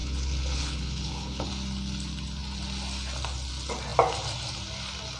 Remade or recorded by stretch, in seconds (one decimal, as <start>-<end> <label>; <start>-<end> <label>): 0.0-1.5 remade; 1.5-5.2 recorded